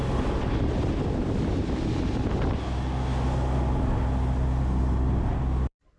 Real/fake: real